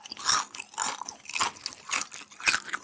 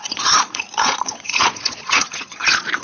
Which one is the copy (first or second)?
second